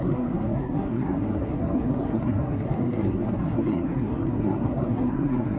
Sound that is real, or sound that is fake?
fake